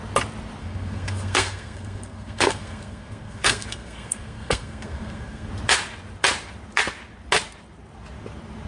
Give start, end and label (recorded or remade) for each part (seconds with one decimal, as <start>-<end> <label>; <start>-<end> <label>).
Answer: 0.0-0.6 recorded; 0.6-5.5 remade; 5.5-8.7 recorded